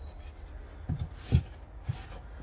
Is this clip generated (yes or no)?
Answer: no